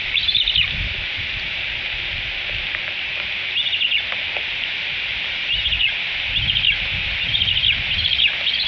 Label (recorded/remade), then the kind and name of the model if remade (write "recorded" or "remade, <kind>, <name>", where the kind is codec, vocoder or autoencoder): recorded